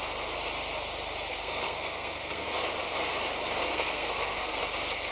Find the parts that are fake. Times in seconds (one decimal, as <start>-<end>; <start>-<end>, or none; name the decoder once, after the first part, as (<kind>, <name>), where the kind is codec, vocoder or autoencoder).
1.3-2.6 (codec, SNAC); 3.7-4.6